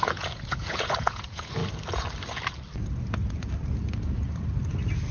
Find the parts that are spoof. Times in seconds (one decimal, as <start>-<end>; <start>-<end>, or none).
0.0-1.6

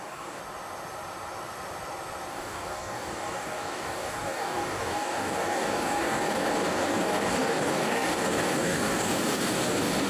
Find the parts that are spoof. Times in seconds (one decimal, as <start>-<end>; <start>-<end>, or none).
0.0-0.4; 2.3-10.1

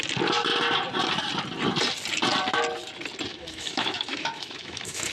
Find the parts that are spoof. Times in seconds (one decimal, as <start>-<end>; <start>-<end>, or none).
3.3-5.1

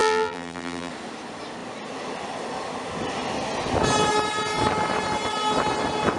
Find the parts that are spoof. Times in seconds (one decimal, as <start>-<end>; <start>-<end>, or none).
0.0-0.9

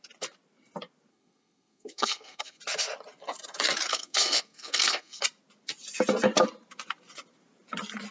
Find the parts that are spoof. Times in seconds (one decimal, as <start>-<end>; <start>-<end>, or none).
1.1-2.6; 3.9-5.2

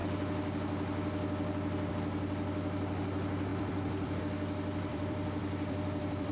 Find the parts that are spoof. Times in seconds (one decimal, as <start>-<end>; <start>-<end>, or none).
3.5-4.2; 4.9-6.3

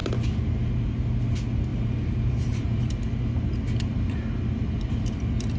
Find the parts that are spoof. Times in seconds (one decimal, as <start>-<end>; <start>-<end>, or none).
1.7-2.9

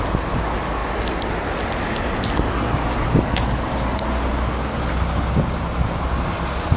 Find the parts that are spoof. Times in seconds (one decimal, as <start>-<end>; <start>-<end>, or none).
none